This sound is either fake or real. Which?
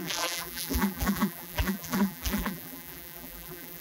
fake